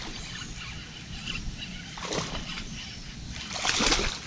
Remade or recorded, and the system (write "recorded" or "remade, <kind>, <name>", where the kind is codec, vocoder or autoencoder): recorded